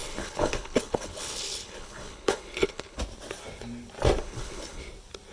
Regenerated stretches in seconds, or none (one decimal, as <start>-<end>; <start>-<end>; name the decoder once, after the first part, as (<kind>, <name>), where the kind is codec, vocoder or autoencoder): 0.0-3.0 (codec, HILCodec); 4.2-4.8